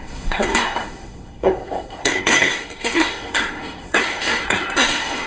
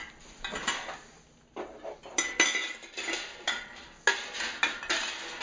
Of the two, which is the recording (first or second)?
second